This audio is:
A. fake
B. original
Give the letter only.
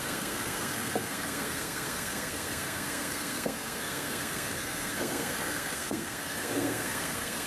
A